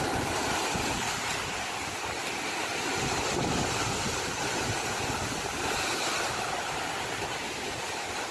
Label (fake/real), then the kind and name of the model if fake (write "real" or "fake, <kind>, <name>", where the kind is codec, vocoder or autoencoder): real